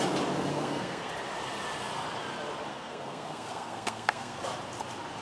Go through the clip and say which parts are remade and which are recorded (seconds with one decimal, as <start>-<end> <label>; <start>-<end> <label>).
0.0-0.5 recorded; 0.5-1.1 remade; 1.1-2.7 recorded; 2.7-4.4 remade; 4.4-5.2 recorded